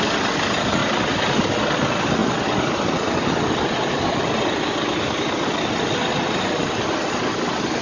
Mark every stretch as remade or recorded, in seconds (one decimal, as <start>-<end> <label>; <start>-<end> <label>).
0.0-7.8 recorded